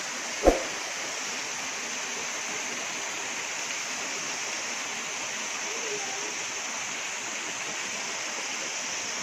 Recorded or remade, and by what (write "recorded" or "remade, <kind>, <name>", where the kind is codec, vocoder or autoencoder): recorded